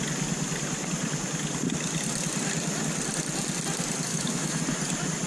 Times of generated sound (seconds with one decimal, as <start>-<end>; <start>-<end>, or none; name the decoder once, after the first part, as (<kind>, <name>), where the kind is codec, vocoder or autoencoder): 4.1-4.6 (autoencoder, DAC-VAE)